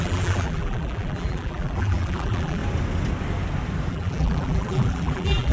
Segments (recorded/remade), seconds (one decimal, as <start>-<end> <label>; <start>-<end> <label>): 0.0-2.6 remade; 2.6-3.9 recorded; 3.9-5.5 remade